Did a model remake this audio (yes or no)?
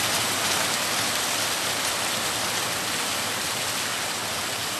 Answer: no